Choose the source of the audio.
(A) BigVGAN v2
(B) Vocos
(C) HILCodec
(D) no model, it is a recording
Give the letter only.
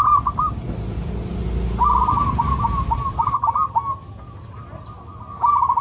D